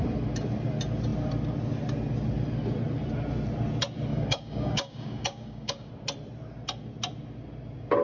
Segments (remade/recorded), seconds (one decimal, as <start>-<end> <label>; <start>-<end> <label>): 0.0-4.1 recorded; 4.1-5.9 remade; 5.9-8.0 recorded